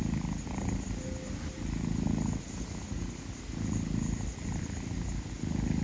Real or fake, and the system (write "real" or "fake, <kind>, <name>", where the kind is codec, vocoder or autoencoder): real